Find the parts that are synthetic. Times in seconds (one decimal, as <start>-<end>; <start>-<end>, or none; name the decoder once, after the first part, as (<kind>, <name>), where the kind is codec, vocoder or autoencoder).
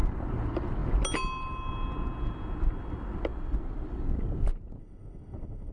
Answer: 4.8-5.7 (autoencoder, DAC-VAE)